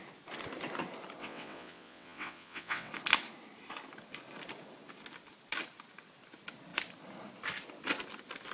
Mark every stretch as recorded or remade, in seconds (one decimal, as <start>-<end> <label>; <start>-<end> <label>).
0.0-1.2 recorded; 1.2-2.9 remade; 2.9-8.5 recorded